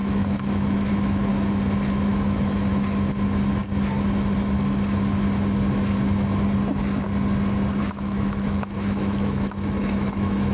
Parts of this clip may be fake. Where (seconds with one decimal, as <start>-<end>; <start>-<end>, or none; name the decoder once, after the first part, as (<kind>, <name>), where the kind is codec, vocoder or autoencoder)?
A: 0.0-1.3 (autoencoder, DAC-VAE); 2.1-2.7; 7.8-10.5